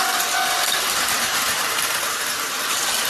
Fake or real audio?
real